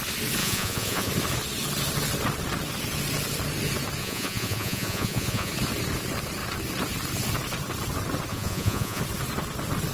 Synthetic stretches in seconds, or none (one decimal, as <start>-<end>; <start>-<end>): 0.4-1.1; 4.0-5.5; 8.3-9.0